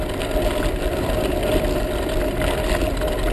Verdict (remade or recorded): recorded